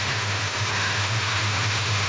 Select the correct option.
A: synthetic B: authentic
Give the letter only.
A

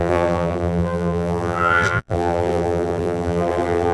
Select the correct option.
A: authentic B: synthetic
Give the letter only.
B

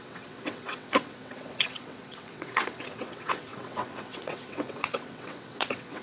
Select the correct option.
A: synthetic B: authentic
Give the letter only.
A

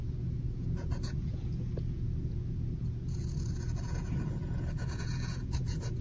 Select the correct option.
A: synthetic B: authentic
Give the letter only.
A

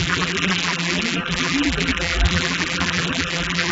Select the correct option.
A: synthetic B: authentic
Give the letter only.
A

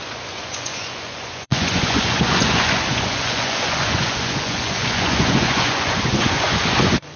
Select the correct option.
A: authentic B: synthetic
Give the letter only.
B